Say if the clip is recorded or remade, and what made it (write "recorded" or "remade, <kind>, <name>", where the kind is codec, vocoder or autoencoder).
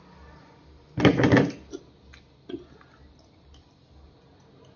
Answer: recorded